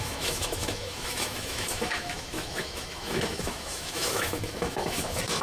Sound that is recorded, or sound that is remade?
remade